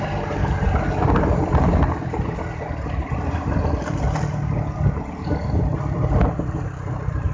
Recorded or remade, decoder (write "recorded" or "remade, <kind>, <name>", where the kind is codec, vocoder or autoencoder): recorded